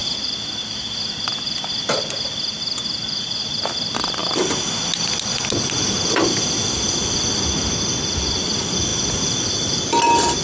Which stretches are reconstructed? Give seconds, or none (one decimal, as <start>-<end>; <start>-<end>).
none